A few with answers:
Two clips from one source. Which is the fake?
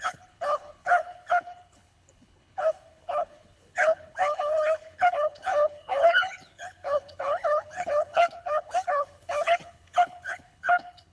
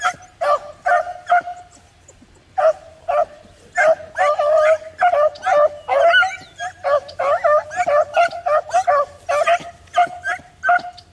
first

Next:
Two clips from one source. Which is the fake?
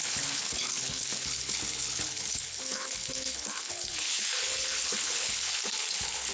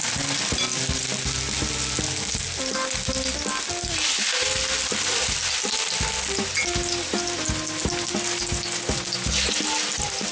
first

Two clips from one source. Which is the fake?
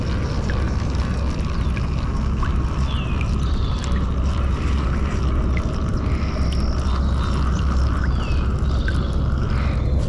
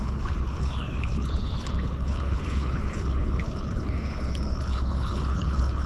second